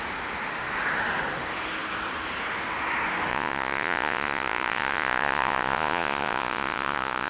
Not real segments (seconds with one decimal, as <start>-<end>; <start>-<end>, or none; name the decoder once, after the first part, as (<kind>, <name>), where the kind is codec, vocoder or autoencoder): 3.3-7.3 (vocoder, Vocos)

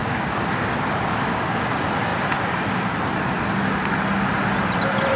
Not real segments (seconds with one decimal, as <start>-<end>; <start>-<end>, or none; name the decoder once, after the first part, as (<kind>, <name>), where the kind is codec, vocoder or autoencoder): 0.0-1.7 (codec, DAC)

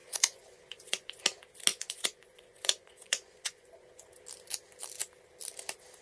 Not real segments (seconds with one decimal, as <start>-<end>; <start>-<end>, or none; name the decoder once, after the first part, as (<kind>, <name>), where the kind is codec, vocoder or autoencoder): 0.0-1.2 (vocoder, Vocos); 1.7-4.1

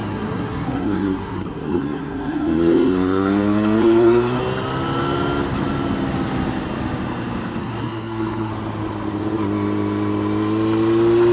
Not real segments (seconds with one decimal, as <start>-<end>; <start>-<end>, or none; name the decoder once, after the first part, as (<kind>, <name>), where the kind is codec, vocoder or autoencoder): 0.0-4.4 (codec, SNAC); 7.6-8.5

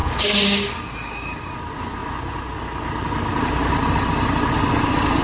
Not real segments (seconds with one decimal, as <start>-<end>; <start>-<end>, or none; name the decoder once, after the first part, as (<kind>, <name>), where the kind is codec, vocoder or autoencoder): 0.0-1.5 (codec, DAC)

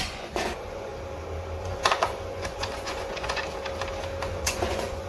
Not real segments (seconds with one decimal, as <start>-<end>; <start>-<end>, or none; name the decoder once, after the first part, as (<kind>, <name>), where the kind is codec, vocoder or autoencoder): 0.0-0.9 (vocoder, Vocos); 1.6-3.4; 4.2-5.1

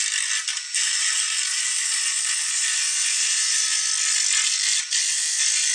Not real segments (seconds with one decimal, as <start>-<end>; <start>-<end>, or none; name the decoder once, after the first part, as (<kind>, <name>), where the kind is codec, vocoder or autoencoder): 0.5-3.9 (vocoder, BigVGAN v2)

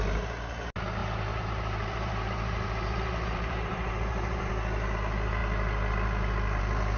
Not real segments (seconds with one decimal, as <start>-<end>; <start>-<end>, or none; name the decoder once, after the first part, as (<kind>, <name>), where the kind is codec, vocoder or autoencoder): 1.0-4.5 (vocoder, BigVGAN v2)